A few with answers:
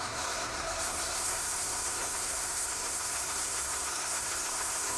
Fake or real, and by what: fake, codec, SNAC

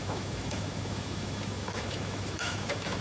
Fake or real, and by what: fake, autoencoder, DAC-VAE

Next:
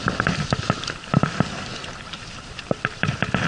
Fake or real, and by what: fake, vocoder, BigVGAN v2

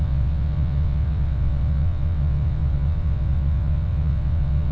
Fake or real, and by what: fake, vocoder, WaveNeXt